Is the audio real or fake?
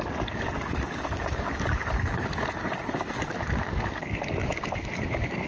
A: fake